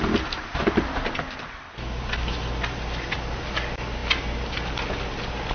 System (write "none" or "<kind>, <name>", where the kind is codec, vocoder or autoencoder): none